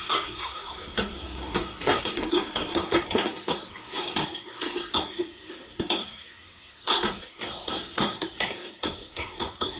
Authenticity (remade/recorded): remade